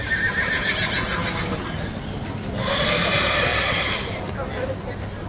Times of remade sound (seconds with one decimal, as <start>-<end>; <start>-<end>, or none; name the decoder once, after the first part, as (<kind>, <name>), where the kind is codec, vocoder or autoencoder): 0.0-0.7 (vocoder, BigVGAN v2); 3.5-4.3